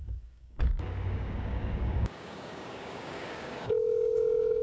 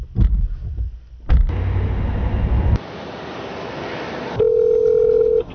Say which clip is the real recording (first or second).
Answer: second